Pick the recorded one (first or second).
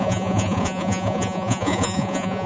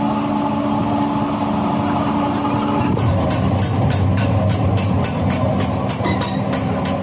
second